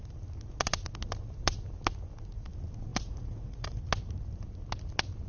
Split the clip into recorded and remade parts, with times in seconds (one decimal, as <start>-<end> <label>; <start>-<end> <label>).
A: 0.0-2.9 recorded; 2.9-3.8 remade; 3.8-5.3 recorded